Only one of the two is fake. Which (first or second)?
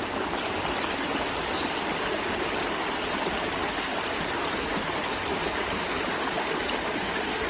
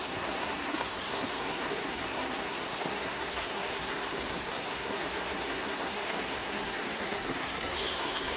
second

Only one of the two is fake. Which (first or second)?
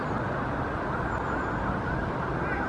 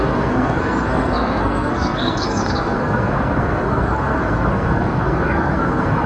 second